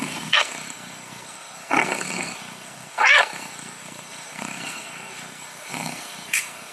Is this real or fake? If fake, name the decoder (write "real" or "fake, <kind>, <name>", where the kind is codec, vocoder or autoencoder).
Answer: fake, codec, SNAC